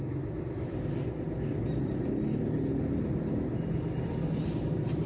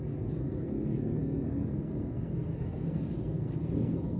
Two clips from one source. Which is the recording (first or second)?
first